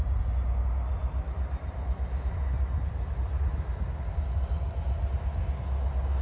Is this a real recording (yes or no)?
yes